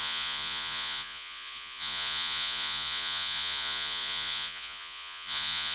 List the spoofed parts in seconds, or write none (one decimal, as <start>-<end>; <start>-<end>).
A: 0.0-5.7